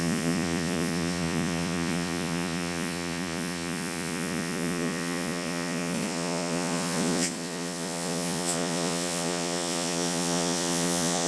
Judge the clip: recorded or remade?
remade